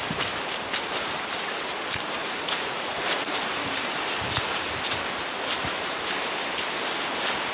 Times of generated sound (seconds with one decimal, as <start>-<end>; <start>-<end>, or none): 2.2-3.3